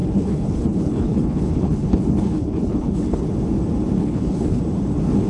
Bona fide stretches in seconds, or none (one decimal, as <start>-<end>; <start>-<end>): 3.2-4.0; 4.6-5.3